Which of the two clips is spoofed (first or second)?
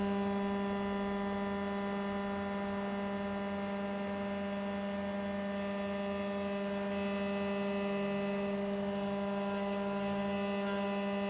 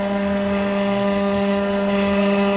second